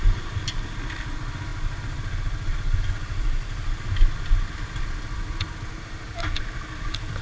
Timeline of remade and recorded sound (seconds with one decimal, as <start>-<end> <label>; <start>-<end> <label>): 0.0-7.2 recorded